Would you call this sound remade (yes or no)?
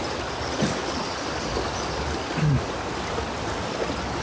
no